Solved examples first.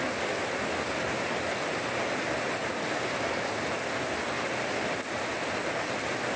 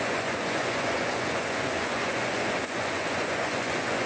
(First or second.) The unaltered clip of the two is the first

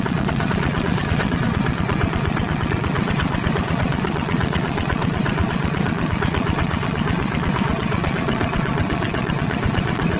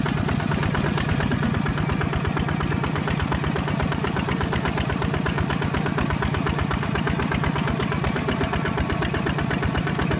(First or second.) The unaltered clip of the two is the second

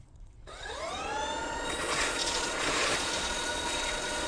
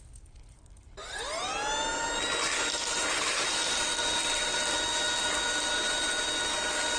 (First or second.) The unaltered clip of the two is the second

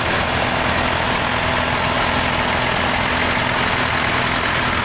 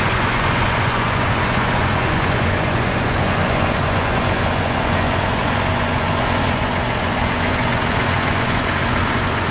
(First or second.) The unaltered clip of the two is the first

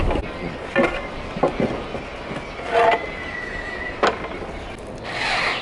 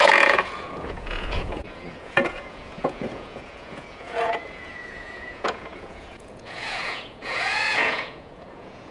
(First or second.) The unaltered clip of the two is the first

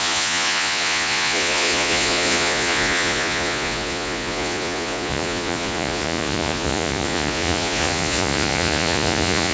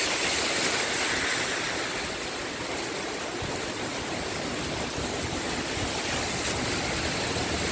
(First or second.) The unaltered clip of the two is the second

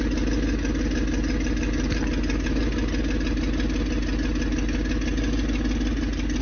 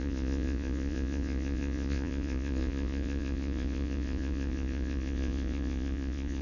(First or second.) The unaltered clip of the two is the first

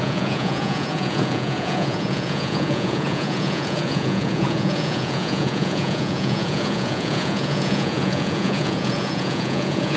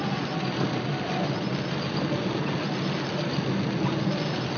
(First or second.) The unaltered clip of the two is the second